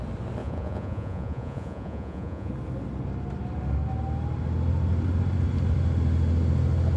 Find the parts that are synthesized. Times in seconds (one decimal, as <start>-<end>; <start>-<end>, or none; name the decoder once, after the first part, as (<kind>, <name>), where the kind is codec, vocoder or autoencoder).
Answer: 0.4-2.5 (vocoder, Vocos)